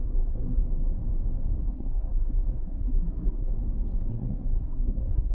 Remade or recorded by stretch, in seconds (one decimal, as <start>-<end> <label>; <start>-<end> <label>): 0.0-0.6 remade; 0.6-1.6 recorded; 1.6-3.5 remade; 3.5-4.1 recorded; 4.1-5.3 remade